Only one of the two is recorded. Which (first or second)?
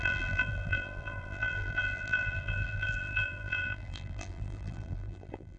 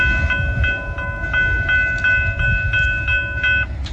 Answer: second